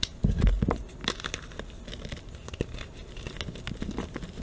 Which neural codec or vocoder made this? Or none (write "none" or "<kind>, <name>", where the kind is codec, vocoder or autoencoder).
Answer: none